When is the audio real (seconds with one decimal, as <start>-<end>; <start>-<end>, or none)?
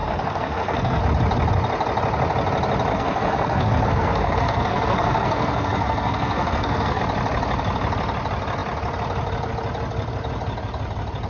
1.0-2.9; 7.0-11.3